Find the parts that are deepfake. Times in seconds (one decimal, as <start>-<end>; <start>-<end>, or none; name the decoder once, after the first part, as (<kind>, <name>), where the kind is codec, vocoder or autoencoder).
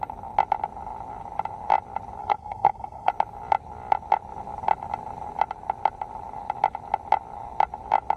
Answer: 2.2-3.1 (codec, SNAC)